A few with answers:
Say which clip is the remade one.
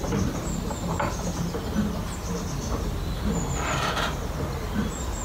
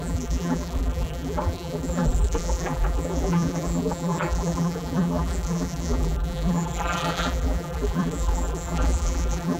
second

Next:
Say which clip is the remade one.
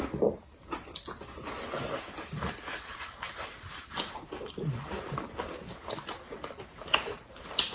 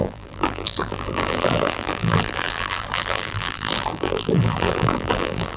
second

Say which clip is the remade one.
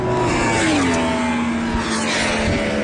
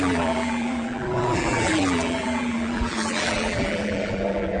second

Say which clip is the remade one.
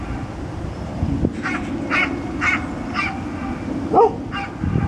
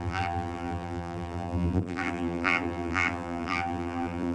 second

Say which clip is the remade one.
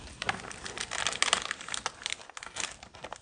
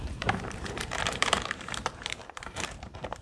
second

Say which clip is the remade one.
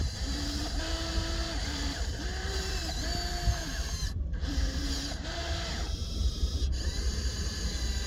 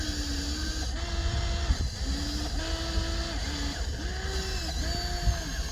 first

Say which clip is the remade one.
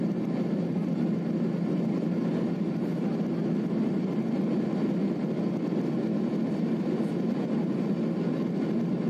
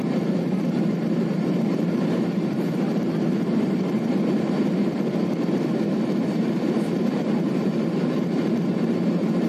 second